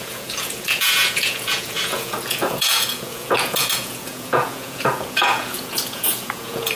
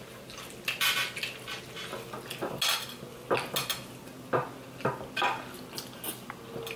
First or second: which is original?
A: second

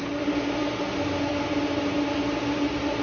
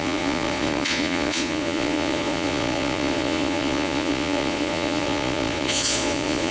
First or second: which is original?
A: first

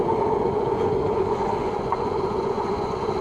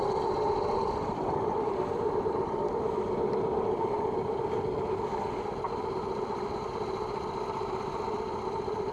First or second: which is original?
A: second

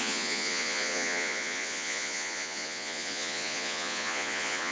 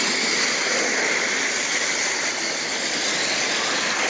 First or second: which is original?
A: second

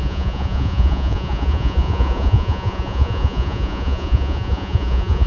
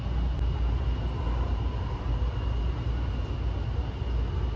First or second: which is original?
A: second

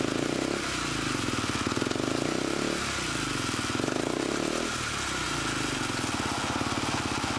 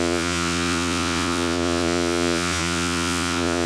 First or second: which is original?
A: first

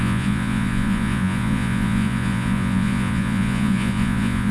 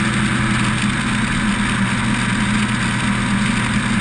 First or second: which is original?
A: second